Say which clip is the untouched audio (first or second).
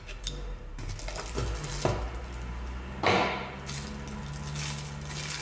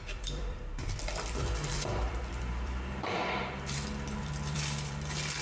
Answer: first